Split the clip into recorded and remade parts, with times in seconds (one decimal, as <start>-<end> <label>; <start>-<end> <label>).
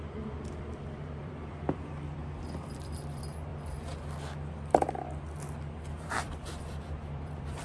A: 0.0-2.2 remade; 2.2-2.7 recorded; 2.7-3.5 remade; 3.5-6.2 recorded; 6.2-7.6 remade